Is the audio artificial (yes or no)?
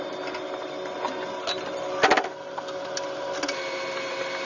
no